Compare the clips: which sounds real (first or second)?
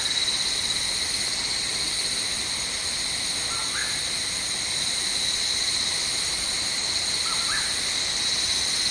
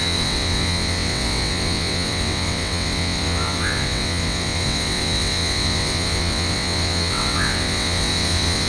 first